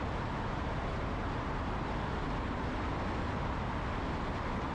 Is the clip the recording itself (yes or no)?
yes